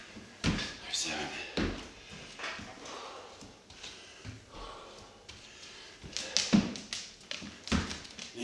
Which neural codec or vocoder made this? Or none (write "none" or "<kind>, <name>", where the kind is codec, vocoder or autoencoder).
none